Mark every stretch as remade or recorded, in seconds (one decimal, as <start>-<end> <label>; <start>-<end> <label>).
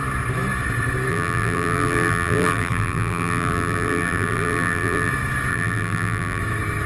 0.0-1.1 recorded; 1.1-5.1 remade; 5.1-5.5 recorded; 5.5-6.4 remade; 6.4-6.9 recorded